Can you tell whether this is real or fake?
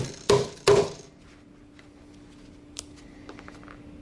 real